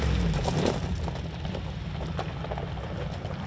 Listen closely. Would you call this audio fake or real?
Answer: real